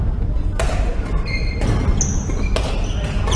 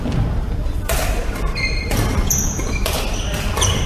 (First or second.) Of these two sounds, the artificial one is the second